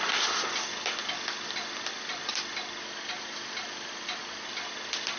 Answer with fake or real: real